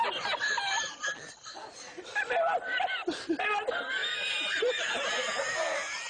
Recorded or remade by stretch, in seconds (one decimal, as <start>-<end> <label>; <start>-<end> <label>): 0.0-4.0 recorded; 4.0-4.9 remade; 4.9-6.1 recorded